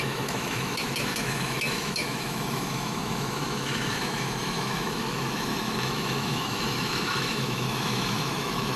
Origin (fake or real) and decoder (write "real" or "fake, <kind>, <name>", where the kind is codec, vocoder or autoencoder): fake, autoencoder, DAC-VAE